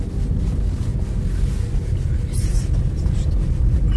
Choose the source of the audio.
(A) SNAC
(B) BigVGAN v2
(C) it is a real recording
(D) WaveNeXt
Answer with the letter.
C